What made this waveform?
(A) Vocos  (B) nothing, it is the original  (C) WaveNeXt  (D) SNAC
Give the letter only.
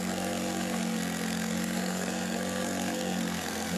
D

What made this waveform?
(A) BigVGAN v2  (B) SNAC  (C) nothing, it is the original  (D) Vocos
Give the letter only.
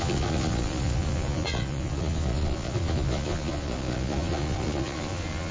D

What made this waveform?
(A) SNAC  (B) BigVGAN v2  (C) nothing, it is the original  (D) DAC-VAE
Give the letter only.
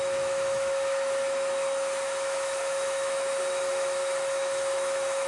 D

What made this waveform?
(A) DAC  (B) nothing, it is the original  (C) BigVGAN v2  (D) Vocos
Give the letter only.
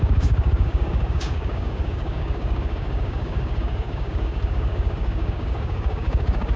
A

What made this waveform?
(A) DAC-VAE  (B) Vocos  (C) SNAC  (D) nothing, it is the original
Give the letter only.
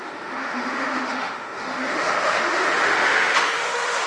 A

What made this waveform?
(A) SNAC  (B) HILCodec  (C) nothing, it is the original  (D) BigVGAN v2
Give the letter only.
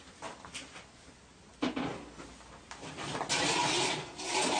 C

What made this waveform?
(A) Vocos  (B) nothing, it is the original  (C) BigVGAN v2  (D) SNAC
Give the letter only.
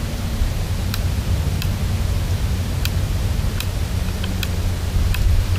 C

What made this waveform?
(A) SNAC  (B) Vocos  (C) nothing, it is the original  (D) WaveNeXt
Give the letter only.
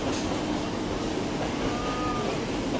C